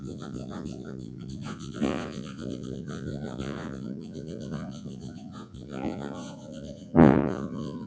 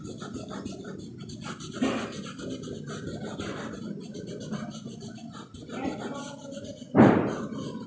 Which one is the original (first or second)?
second